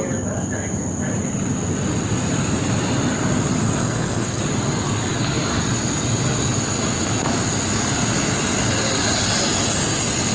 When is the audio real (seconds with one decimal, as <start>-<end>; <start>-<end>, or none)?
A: 0.0-3.8; 4.4-10.3